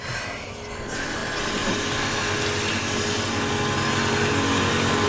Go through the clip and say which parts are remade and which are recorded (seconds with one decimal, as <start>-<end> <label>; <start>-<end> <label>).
0.0-5.1 recorded